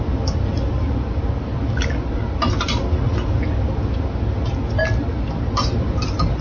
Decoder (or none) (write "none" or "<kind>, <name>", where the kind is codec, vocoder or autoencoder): none